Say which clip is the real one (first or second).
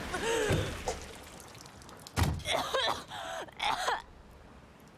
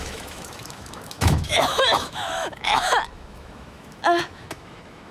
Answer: first